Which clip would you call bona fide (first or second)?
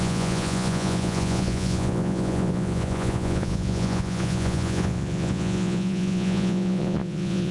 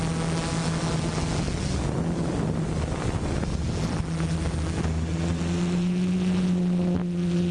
second